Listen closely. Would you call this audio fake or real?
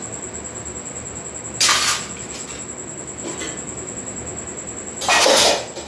real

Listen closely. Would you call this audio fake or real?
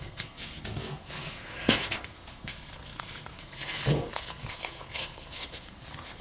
fake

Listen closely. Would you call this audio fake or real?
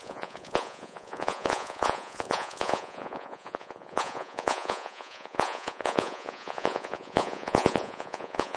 fake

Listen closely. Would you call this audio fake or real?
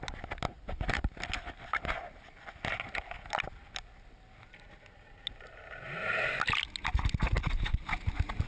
real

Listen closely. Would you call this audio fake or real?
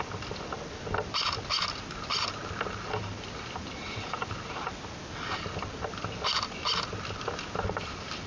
real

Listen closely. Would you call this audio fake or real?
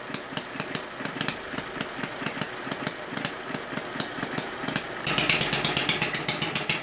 real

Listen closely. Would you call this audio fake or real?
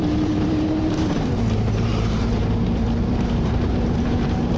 fake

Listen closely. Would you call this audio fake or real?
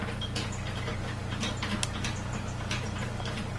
real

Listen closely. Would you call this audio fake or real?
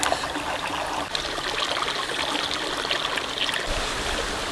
real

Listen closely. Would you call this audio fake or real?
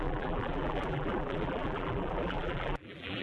fake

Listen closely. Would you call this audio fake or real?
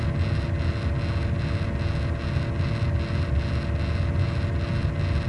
real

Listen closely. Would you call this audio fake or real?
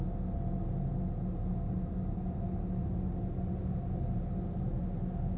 real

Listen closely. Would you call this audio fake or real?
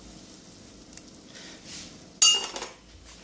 real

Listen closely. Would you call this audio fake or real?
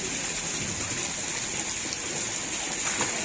real